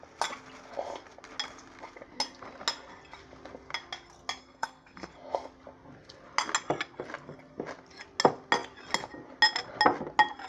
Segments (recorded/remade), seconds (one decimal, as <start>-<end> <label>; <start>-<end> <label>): 0.0-4.4 recorded; 4.4-5.1 remade; 5.1-10.5 recorded

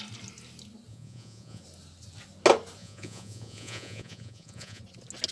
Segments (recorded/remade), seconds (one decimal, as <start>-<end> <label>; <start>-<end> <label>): 0.0-0.9 recorded; 0.9-1.6 remade; 1.6-2.8 recorded; 2.8-4.8 remade; 4.8-5.3 recorded

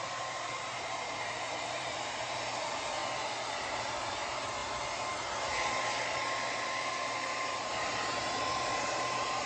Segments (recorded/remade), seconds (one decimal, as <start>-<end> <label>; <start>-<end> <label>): 0.0-3.0 remade; 3.0-3.5 recorded; 3.5-4.6 remade; 4.6-5.4 recorded; 5.4-9.5 remade

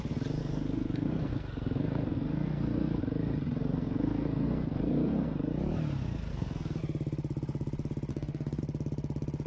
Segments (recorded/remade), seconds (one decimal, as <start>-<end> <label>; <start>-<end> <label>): 0.0-0.4 recorded; 0.4-3.0 remade; 3.0-3.6 recorded; 3.6-5.5 remade; 5.5-6.3 recorded; 6.3-6.8 remade; 6.8-8.1 recorded; 8.1-8.6 remade; 8.6-9.5 recorded